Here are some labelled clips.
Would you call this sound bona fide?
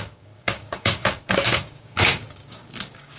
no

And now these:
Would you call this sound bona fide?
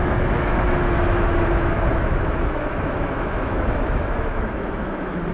no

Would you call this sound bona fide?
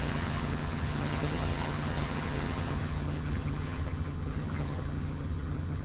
no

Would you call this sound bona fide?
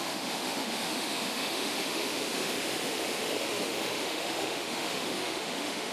no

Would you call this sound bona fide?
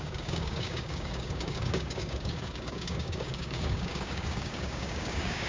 no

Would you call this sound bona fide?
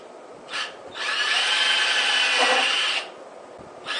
yes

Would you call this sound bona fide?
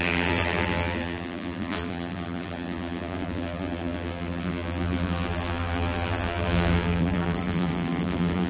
no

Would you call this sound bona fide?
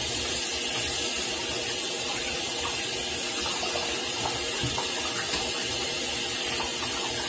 yes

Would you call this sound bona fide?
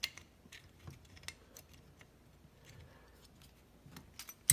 yes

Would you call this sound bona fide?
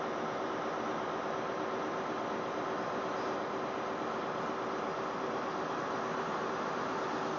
yes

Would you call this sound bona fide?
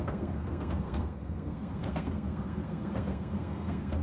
no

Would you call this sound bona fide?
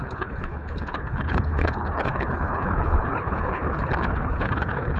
no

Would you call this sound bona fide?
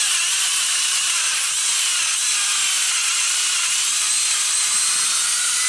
yes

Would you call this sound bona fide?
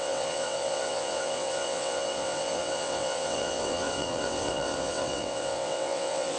no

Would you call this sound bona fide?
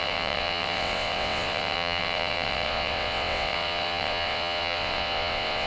no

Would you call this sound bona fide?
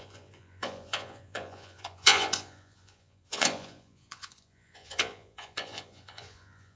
no